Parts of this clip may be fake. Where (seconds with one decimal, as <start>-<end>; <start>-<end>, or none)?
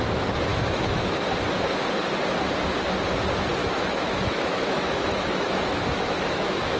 0.5-1.2; 3.6-6.8